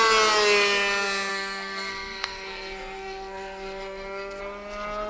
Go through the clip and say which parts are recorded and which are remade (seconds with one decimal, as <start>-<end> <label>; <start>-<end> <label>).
0.0-1.3 recorded; 1.3-4.4 remade; 4.4-5.1 recorded